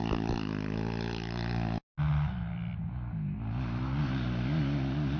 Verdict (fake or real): real